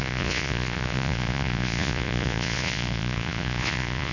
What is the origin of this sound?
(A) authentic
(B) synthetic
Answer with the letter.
B